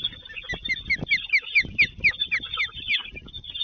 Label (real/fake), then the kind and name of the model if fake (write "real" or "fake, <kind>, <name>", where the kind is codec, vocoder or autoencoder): real